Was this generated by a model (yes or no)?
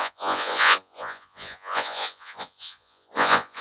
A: yes